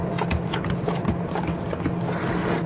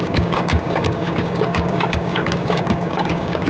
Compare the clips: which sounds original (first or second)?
first